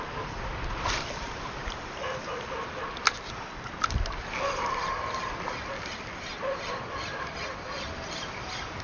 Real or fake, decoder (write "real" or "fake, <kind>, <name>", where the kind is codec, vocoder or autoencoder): real